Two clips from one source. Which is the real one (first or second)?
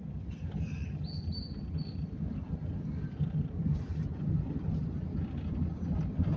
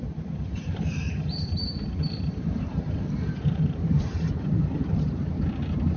first